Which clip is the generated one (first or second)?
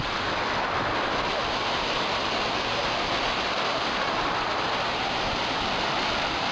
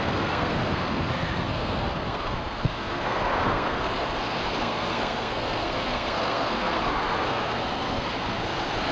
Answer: second